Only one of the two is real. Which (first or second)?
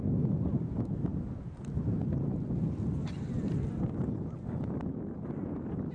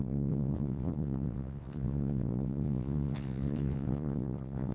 first